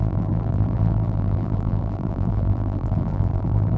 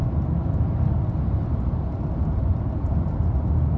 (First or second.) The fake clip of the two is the first